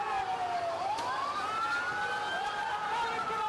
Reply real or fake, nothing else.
real